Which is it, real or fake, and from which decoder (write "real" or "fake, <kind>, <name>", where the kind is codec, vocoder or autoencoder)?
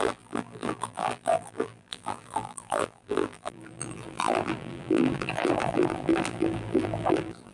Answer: fake, vocoder, BigVGAN v2